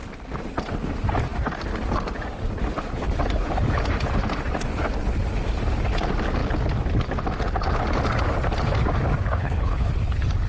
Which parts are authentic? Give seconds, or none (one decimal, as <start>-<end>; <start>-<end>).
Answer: 0.0-9.4; 9.9-10.5